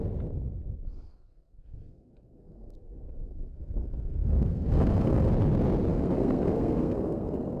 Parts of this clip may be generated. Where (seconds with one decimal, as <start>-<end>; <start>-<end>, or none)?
0.9-5.3; 5.9-7.6